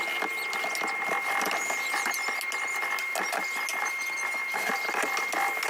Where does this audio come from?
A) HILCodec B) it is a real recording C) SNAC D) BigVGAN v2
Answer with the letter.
B